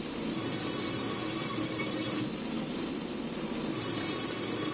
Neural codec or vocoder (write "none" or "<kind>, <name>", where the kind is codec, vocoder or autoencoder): none